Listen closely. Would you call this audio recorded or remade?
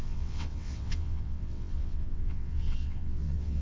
remade